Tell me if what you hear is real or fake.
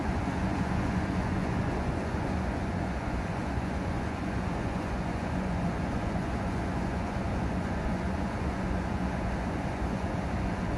fake